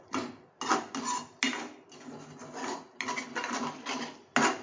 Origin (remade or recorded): recorded